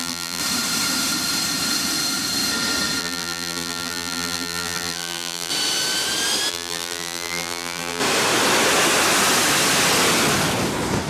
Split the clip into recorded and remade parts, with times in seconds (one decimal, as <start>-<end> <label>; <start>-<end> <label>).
0.0-0.4 remade; 0.4-3.0 recorded; 3.0-5.5 remade; 5.5-6.5 recorded; 6.5-8.0 remade; 8.0-11.1 recorded

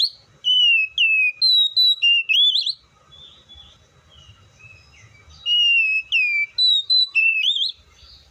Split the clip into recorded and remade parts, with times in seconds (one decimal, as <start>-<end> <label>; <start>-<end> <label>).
0.0-6.7 recorded; 6.7-8.3 remade

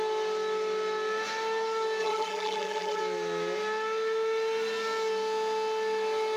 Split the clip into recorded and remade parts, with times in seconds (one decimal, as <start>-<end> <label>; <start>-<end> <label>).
0.0-2.0 recorded; 2.0-3.0 remade; 3.0-6.4 recorded

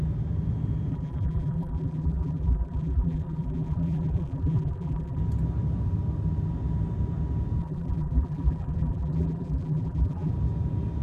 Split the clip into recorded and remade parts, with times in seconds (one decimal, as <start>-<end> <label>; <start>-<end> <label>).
0.0-0.9 recorded; 0.9-5.2 remade; 5.2-7.6 recorded; 7.6-10.3 remade; 10.3-11.0 recorded

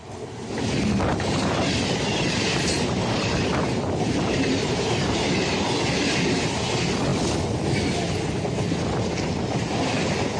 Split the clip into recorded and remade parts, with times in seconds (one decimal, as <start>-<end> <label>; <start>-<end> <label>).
0.0-1.1 recorded; 1.1-5.5 remade; 5.5-10.4 recorded

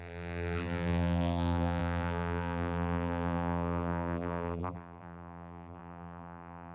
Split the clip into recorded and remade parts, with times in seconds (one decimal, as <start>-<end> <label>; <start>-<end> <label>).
0.0-6.7 remade

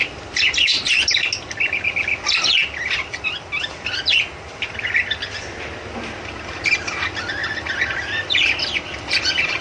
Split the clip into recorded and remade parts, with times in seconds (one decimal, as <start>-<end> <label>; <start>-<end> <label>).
0.0-7.4 recorded; 7.4-9.2 remade; 9.2-9.6 recorded

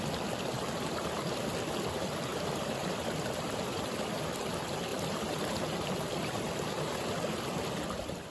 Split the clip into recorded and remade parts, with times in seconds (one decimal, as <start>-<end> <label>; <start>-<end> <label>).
0.0-2.3 recorded; 2.3-2.9 remade; 2.9-4.9 recorded; 4.9-6.6 remade; 6.6-8.3 recorded